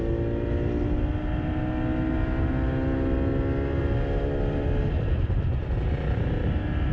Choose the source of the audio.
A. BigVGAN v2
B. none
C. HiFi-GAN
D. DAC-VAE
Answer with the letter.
B